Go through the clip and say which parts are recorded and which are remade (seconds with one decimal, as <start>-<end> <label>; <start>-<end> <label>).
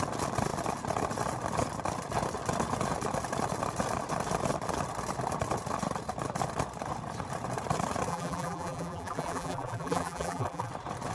0.0-8.1 recorded; 8.1-10.7 remade; 10.7-11.1 recorded